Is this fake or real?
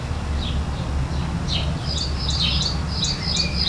real